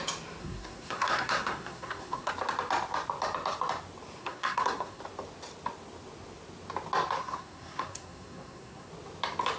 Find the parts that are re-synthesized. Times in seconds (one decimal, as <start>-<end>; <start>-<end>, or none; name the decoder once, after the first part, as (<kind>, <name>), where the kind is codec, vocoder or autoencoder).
0.4-2.3 (codec, SNAC); 4.2-5.0; 7.2-8.9